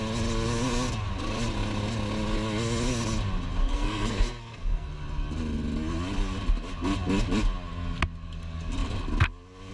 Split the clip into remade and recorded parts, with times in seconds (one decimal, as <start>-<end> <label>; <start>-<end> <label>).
0.0-3.6 recorded; 3.6-4.9 remade; 4.9-9.7 recorded